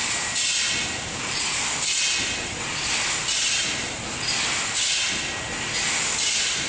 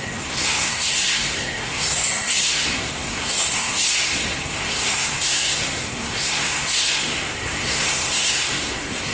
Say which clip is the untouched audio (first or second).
first